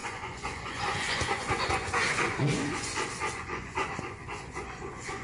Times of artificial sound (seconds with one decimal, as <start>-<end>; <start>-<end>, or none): 0.0-5.2

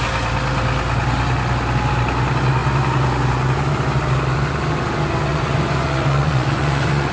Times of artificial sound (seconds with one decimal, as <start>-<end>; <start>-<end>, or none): 5.3-7.1

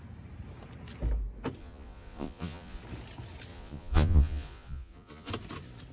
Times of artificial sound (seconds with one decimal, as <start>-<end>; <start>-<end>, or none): 1.6-2.8; 3.5-5.3

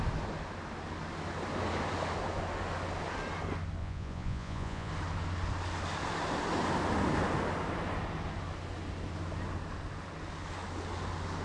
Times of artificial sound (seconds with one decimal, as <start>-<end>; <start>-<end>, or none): 3.8-4.9

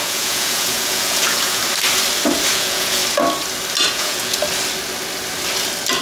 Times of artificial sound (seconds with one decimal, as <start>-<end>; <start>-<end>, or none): 0.0-1.6; 2.5-3.0; 3.9-4.4

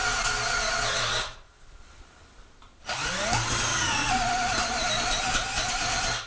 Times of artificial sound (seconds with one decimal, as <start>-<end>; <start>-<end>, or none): 3.7-4.3